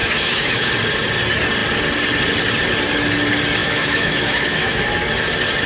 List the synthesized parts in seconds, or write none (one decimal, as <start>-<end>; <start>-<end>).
0.0-0.7; 3.6-4.8